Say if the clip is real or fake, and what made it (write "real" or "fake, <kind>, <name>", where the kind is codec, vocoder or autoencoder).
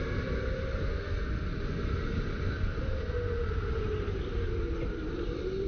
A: real